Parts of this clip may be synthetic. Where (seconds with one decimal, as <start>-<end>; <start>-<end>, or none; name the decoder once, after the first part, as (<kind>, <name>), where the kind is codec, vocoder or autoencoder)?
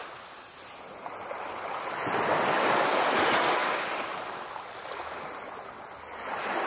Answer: none